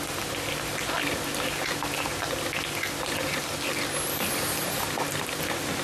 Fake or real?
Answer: real